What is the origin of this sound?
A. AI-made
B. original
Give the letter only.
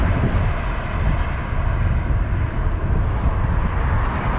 B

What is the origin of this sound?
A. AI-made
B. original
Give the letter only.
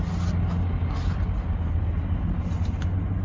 B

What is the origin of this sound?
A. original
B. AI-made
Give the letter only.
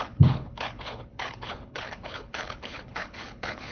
B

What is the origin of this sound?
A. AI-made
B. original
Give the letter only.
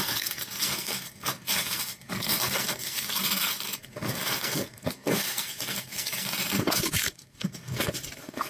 A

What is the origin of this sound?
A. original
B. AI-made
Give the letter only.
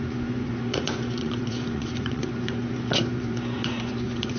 B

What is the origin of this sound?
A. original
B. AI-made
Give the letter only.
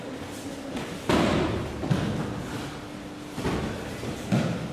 A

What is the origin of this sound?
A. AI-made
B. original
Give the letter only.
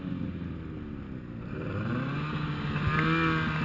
B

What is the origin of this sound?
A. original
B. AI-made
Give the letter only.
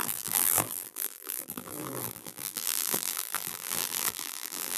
B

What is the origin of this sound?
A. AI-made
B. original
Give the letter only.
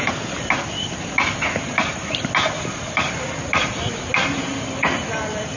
B